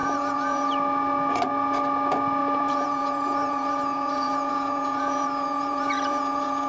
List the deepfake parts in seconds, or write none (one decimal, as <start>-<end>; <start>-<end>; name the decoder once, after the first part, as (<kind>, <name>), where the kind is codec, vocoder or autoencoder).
0.0-0.7 (vocoder, Vocos); 2.4-6.7